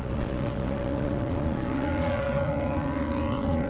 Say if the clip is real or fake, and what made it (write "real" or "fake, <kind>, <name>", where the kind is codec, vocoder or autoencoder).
fake, vocoder, Vocos